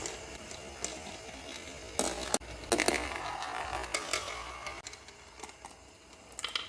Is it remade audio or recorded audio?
recorded